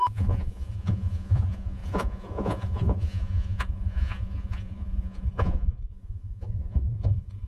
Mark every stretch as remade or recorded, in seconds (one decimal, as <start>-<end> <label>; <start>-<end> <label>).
0.0-7.5 remade